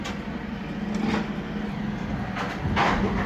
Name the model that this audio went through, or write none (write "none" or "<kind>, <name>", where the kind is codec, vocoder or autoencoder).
none